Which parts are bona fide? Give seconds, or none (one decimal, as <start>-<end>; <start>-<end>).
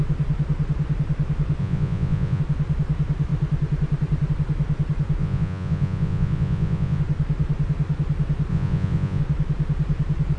0.0-1.6; 2.4-5.2; 7.0-8.5; 9.2-10.4